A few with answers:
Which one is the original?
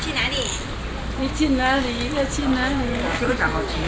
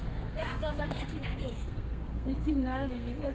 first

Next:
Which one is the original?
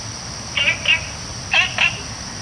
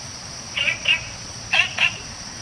first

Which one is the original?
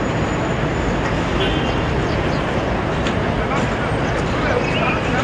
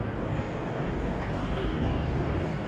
first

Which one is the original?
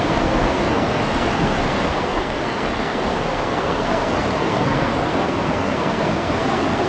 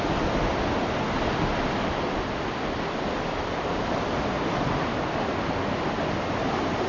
second